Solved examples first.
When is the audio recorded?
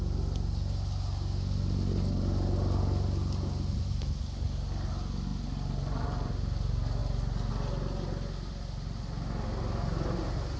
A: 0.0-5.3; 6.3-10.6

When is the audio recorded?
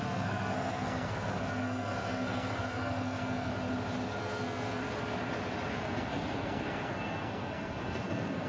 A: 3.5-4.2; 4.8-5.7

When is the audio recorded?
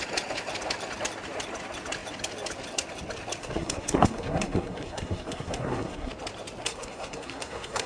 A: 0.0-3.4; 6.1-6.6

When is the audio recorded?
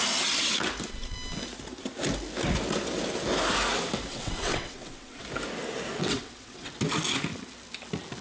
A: 0.0-4.1; 5.2-5.9; 6.7-8.2